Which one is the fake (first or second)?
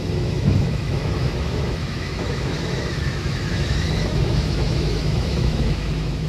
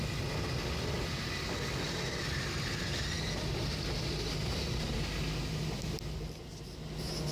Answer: first